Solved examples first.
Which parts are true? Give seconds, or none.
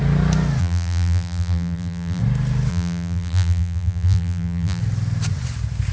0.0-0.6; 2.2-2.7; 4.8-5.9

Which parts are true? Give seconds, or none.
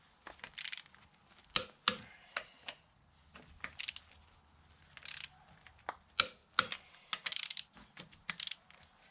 0.0-2.2; 3.1-9.1